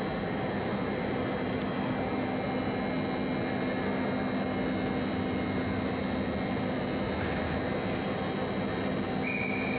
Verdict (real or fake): real